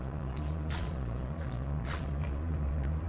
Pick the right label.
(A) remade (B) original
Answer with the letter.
A